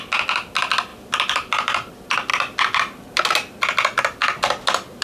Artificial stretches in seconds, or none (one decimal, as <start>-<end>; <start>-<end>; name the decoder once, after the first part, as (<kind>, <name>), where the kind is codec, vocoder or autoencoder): none